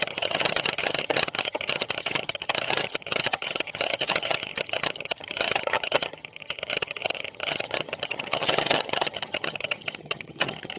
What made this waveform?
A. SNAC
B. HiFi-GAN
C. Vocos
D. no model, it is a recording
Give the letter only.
B